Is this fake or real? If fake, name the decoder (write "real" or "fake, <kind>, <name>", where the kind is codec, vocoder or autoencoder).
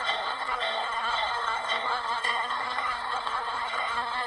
fake, codec, SNAC